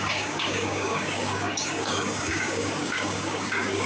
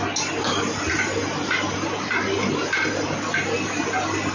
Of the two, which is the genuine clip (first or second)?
second